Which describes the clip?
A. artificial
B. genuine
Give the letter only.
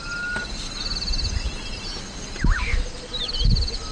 B